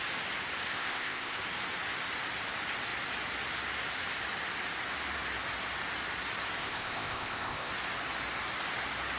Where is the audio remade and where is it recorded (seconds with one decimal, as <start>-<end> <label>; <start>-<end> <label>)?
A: 0.0-0.7 recorded; 0.7-1.4 remade; 1.4-6.6 recorded; 6.6-7.7 remade; 7.7-9.2 recorded